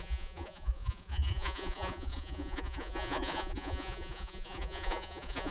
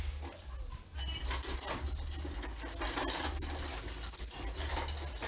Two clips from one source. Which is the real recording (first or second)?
second